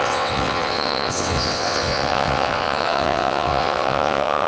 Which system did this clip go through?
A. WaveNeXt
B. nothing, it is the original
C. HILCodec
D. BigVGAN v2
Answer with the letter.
A